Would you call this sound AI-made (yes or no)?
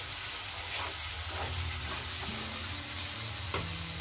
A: no